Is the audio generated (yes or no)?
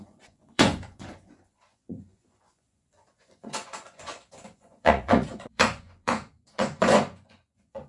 yes